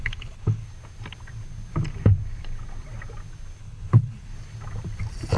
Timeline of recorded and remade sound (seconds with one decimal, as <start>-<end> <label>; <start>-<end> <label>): 0.0-0.6 remade; 0.6-3.6 recorded; 3.6-4.3 remade; 4.3-5.4 recorded